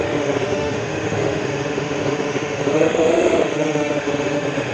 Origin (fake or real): fake